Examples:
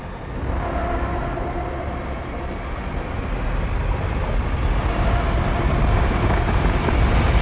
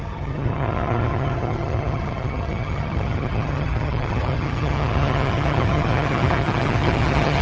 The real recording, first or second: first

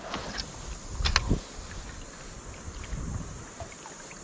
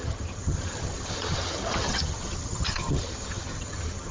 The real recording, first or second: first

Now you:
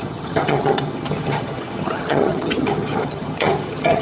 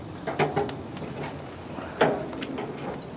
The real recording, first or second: second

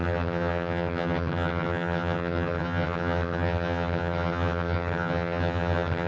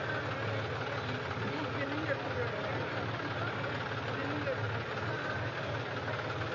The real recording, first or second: second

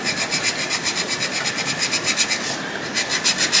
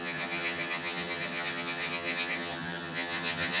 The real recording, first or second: first